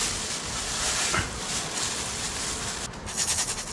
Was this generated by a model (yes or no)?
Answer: no